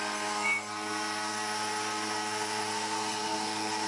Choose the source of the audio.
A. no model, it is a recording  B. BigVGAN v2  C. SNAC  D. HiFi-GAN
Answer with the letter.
C